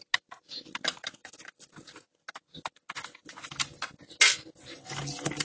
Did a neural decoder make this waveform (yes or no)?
no